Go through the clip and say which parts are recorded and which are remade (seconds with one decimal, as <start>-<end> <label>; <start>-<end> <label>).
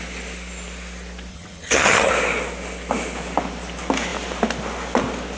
0.0-1.3 recorded; 1.3-2.1 remade; 2.1-5.4 recorded